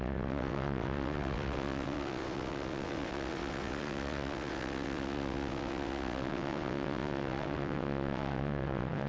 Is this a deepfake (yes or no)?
yes